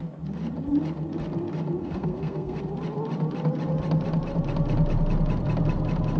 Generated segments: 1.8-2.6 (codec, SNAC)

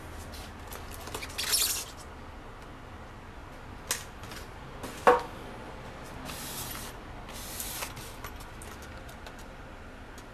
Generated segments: none

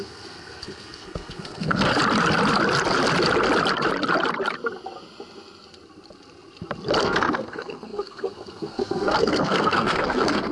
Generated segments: 0.0-1.9 (codec, SNAC); 7.0-10.5

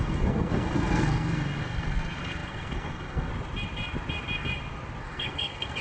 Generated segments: 0.0-3.3 (codec, SNAC); 5.0-5.8